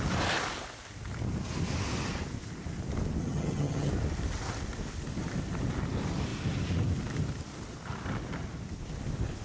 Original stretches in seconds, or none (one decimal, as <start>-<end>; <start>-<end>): 0.0-3.2; 3.9-9.4